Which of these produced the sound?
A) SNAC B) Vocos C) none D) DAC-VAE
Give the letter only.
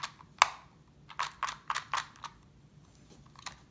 C